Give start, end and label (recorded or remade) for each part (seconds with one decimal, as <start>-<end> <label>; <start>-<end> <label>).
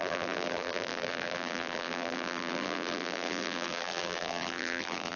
0.0-5.2 remade